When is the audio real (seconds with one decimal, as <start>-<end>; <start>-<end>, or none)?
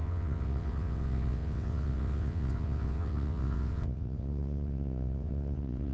none